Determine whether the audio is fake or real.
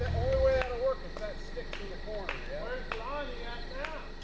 real